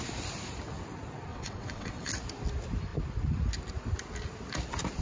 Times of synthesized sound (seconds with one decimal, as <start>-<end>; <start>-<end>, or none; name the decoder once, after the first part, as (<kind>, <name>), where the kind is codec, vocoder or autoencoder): 1.3-2.1 (vocoder, WaveNeXt)